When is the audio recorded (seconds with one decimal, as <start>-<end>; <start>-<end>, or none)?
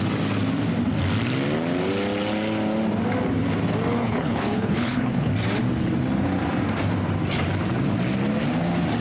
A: 0.0-4.0; 5.3-9.0